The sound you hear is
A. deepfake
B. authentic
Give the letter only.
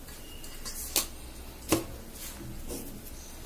B